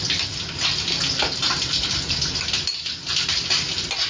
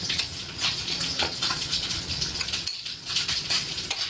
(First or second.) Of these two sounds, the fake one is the second